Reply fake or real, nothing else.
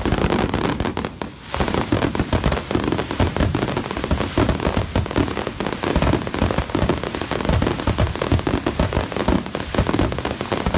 real